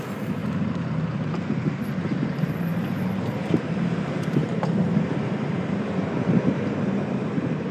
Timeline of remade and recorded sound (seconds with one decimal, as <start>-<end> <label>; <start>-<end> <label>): 0.0-0.4 remade; 0.4-1.6 recorded; 1.6-7.7 remade